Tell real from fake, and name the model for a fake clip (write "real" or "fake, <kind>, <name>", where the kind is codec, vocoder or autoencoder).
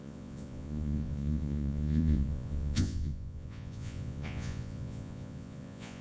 fake, vocoder, Vocos